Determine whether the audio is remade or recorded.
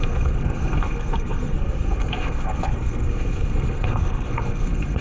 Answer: remade